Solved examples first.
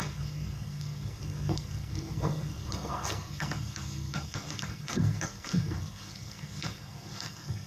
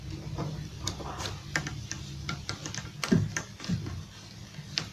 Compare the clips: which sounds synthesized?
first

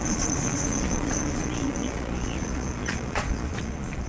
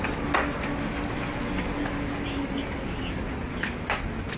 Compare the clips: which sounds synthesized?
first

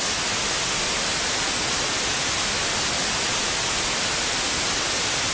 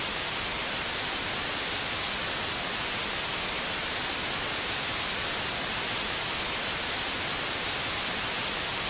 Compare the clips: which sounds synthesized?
second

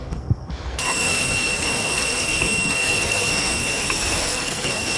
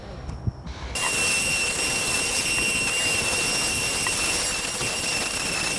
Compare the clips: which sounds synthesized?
first